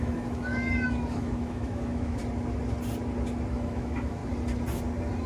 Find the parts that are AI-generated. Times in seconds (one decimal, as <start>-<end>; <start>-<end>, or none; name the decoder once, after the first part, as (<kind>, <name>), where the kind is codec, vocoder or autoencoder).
0.0-2.2 (autoencoder, DAC-VAE); 3.5-4.2